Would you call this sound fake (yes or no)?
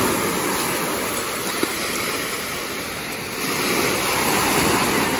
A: yes